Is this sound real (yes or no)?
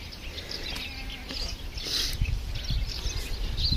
yes